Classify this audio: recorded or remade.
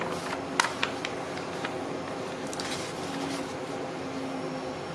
recorded